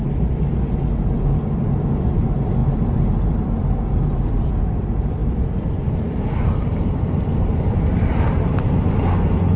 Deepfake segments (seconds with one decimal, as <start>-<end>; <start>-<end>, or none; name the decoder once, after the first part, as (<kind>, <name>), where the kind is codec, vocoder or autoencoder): 2.6-4.5 (vocoder, BigVGAN v2); 5.2-9.1